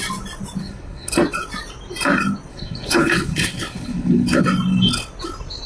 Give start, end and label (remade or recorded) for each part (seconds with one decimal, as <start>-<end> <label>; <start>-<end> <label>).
0.0-0.6 recorded; 0.6-1.1 remade; 1.1-2.5 recorded; 2.5-4.4 remade; 4.4-5.7 recorded